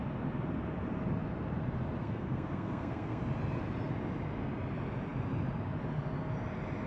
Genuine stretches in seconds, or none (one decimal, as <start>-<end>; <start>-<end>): 0.0-2.0; 3.2-6.9

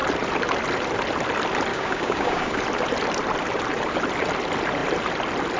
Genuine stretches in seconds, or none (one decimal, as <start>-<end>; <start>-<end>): 0.0-1.7; 2.6-5.6

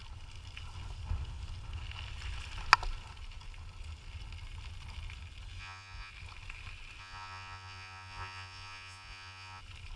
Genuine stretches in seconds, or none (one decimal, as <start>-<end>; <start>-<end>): 0.0-5.6; 6.1-7.0; 9.6-10.0

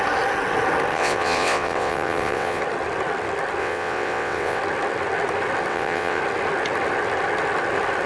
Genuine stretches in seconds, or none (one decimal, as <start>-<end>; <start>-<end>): 0.0-0.9; 2.6-3.6; 4.6-5.7; 6.2-8.1

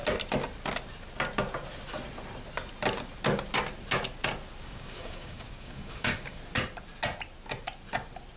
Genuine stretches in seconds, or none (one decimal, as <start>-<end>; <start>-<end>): 0.0-4.6; 6.4-8.4

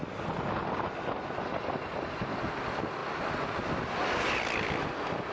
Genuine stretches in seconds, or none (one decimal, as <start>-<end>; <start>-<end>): 0.0-5.3